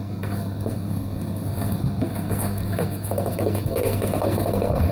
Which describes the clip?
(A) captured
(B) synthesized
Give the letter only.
B